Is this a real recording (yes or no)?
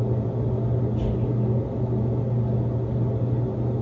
yes